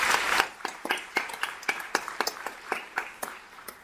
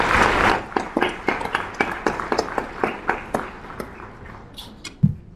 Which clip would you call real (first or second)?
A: second